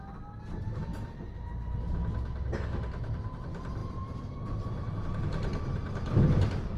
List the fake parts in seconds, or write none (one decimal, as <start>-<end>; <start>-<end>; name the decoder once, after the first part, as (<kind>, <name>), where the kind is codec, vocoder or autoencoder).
none